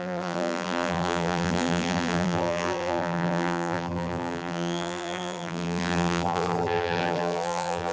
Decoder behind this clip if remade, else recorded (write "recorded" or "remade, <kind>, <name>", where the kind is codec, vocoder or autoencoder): remade, vocoder, BigVGAN v2